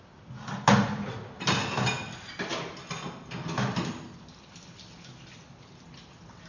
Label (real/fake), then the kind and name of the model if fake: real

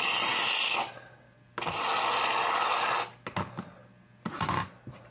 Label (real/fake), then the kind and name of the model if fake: real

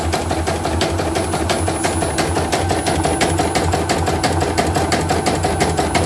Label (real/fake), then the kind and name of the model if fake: real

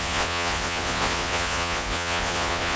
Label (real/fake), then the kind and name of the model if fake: fake, vocoder, Vocos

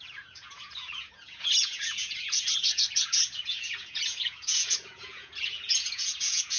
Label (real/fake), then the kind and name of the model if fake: fake, vocoder, Vocos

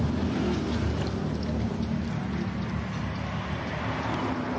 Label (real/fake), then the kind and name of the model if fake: real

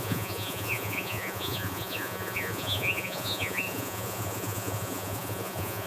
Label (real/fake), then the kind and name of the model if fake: fake, vocoder, Vocos